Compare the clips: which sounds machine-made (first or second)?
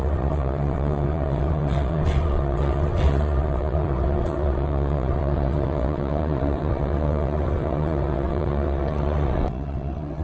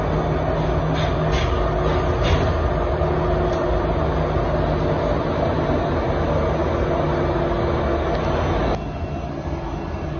first